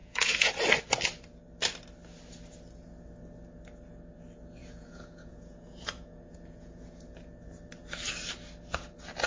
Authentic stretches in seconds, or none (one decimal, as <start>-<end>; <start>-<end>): 0.5-4.6; 7.0-9.3